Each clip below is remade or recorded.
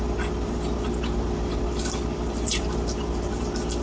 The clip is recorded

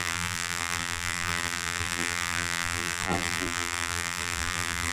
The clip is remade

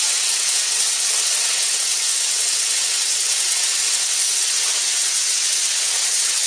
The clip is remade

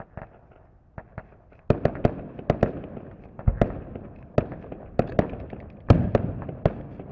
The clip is recorded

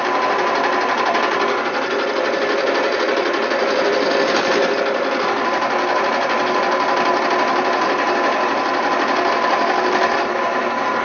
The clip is recorded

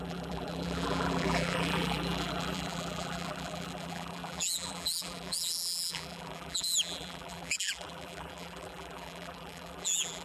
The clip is remade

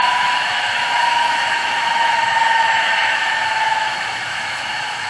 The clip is remade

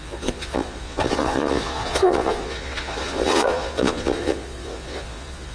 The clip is remade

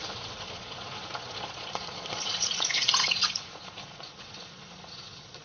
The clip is remade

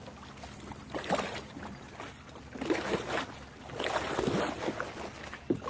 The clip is recorded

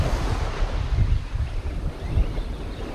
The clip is recorded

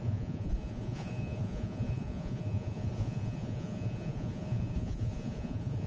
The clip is remade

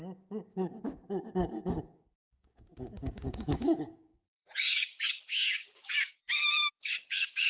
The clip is remade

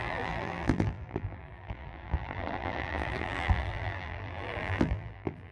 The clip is remade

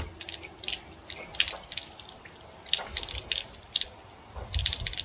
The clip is recorded